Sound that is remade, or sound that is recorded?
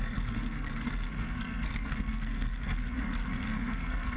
remade